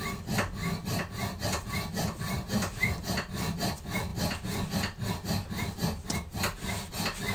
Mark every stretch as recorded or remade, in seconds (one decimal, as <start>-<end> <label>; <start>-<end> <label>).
0.0-7.3 recorded